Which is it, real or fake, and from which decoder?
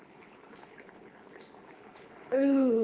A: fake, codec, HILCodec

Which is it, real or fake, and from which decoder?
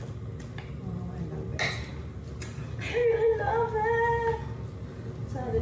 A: real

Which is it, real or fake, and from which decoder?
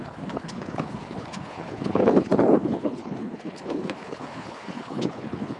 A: fake, codec, HILCodec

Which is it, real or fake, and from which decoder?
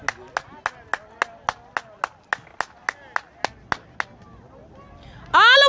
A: real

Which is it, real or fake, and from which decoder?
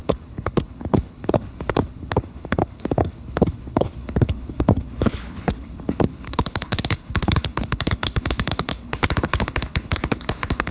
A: fake, codec, HILCodec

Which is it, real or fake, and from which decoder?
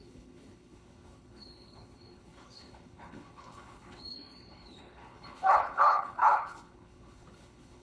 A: fake, codec, HILCodec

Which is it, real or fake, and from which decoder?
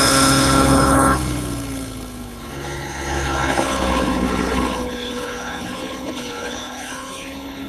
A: fake, codec, HILCodec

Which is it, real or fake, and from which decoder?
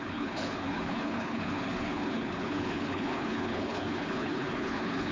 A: fake, codec, HILCodec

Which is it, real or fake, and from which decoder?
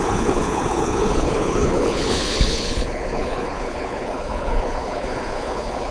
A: fake, codec, HILCodec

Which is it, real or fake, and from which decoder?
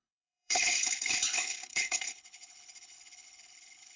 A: fake, codec, HILCodec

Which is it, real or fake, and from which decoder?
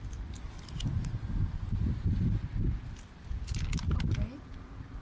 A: real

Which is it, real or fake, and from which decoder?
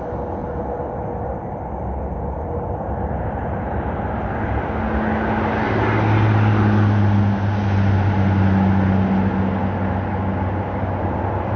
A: real